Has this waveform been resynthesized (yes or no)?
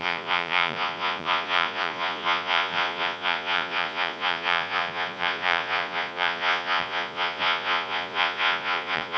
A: yes